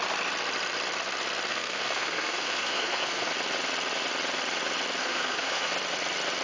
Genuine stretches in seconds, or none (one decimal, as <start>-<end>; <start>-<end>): 0.0-1.5; 3.3-5.0; 5.7-6.4